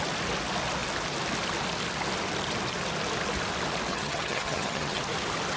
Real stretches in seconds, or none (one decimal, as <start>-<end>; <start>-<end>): 0.0-3.9; 5.0-5.6

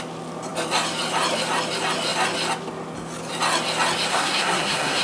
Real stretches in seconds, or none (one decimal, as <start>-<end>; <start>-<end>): 0.0-4.1

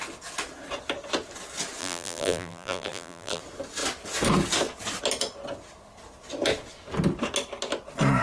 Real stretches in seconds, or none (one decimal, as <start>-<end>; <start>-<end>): 0.0-1.8; 3.4-8.2

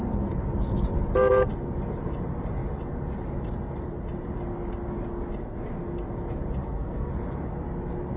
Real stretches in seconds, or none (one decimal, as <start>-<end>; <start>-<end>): 0.0-6.6; 7.1-8.2

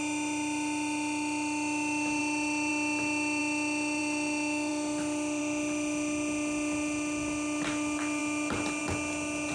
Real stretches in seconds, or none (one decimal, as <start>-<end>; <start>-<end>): 0.0-9.5

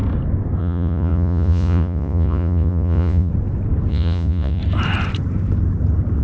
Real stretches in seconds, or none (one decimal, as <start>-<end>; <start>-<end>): 0.0-0.6; 3.3-3.9; 4.6-6.2

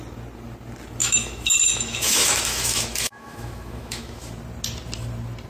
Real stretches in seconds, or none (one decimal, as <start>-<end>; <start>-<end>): 0.0-1.0; 4.3-5.5

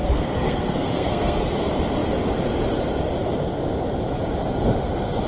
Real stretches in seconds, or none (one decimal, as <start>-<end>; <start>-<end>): 1.5-5.3